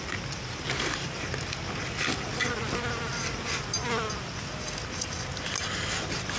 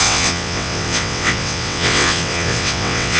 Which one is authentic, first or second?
first